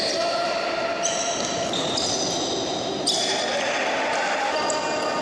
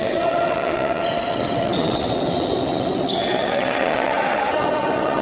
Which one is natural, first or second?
first